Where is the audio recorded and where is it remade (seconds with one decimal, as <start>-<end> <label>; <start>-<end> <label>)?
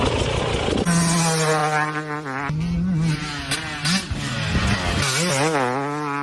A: 0.0-6.2 recorded